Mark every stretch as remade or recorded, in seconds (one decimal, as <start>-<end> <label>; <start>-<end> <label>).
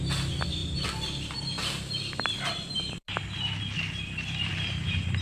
0.0-5.2 recorded